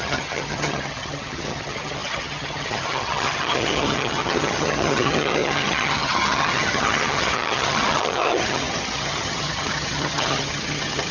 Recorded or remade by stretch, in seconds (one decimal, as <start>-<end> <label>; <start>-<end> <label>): 0.0-11.1 remade